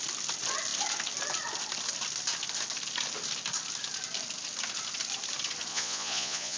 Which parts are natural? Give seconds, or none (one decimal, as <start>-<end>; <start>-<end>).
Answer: 0.0-5.7